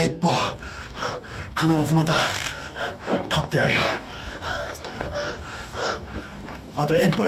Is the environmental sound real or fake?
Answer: fake